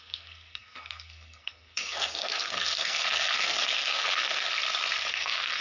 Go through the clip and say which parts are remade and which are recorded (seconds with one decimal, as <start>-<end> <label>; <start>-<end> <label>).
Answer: 0.0-4.5 remade; 4.5-5.1 recorded; 5.1-5.6 remade